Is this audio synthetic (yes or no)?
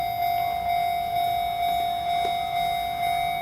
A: no